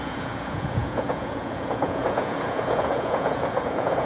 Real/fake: fake